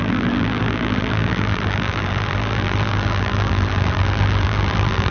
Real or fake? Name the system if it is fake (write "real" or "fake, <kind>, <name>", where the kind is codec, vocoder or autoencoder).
fake, vocoder, BigVGAN v2